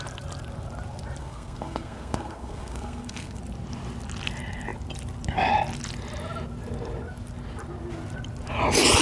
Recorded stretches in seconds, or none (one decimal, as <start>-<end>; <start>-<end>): 0.0-1.2; 3.4-9.0